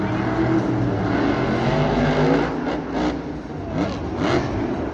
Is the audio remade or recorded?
recorded